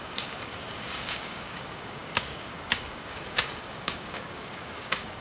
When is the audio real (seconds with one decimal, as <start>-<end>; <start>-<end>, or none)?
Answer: none